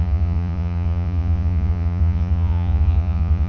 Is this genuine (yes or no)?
no